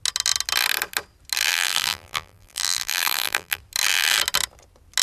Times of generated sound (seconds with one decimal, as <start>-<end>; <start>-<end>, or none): 1.5-3.6